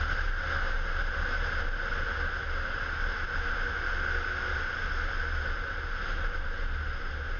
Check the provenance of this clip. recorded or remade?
recorded